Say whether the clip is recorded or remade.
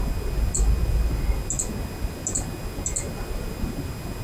recorded